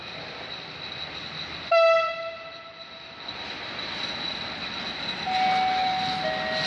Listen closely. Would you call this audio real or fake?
real